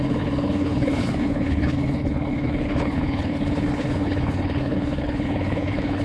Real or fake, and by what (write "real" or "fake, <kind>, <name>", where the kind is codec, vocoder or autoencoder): fake, codec, HILCodec